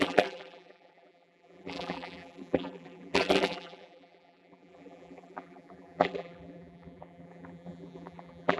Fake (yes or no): yes